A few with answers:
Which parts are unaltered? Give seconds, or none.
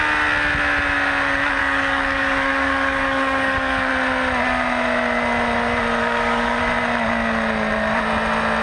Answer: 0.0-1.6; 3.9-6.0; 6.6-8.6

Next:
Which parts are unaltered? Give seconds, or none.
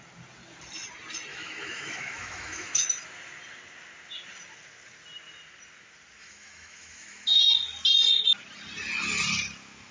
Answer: 0.0-1.3; 2.9-6.2; 7.4-9.9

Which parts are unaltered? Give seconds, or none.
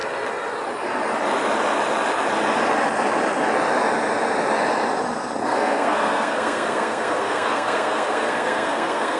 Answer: 0.0-5.4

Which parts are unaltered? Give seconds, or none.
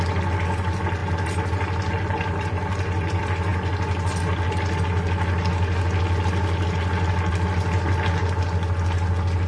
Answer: 0.0-9.5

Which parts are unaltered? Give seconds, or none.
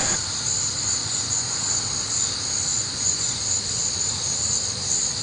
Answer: 0.0-1.0; 1.7-2.7; 3.4-5.2